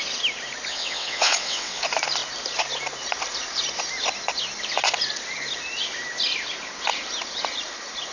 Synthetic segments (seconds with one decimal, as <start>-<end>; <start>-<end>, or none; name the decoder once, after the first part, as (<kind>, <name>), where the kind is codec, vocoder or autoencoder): 0.7-1.8 (vocoder, WaveNeXt)